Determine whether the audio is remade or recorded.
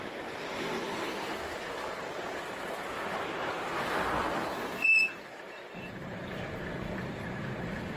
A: remade